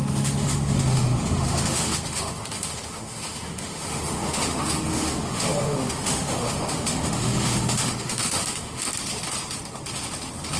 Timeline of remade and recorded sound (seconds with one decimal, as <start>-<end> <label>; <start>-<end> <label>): 0.0-8.9 remade; 8.9-10.6 recorded